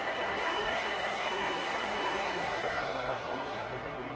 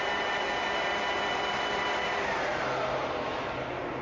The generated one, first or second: first